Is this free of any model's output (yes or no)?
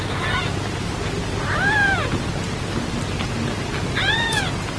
yes